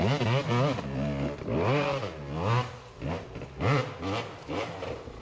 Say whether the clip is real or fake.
real